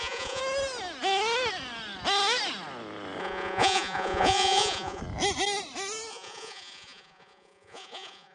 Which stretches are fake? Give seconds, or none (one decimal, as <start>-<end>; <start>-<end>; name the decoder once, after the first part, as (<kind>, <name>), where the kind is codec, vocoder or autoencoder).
0.0-0.4 (vocoder, Vocos); 3.2-5.0; 6.1-8.3